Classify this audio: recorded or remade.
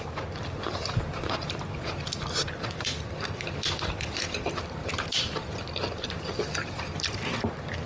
remade